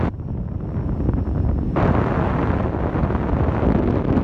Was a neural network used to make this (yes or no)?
no